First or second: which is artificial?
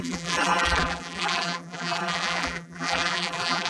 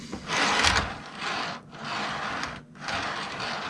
first